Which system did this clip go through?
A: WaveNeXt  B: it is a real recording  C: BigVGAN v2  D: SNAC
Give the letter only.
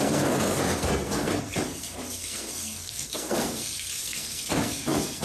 D